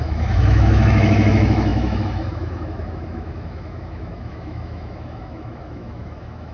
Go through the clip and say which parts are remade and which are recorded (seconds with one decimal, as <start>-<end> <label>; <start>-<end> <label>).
0.0-6.5 remade